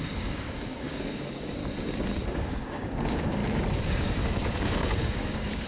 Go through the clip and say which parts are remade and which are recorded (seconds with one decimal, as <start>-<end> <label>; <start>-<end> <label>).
0.0-1.6 remade; 1.6-2.3 recorded; 2.3-3.4 remade; 3.4-3.9 recorded; 3.9-5.7 remade

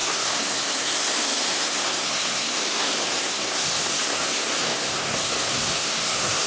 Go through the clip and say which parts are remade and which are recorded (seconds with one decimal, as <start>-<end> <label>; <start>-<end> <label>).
0.0-6.5 remade